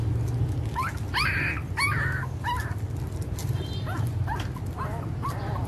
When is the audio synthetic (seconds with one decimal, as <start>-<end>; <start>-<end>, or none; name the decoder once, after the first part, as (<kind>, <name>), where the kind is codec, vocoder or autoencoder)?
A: 3.4-4.3 (vocoder, BigVGAN v2)